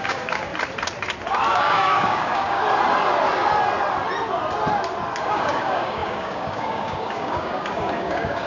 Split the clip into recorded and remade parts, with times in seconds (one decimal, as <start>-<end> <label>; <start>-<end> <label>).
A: 0.0-0.5 remade; 0.5-1.5 recorded; 1.5-2.6 remade; 2.6-5.2 recorded; 5.2-8.5 remade